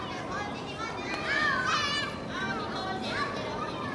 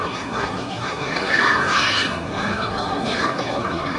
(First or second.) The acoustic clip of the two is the first